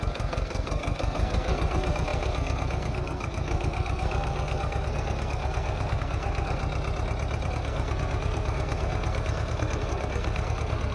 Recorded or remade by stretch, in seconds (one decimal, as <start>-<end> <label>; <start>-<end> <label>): 0.0-6.6 remade; 6.6-7.5 recorded; 7.5-10.9 remade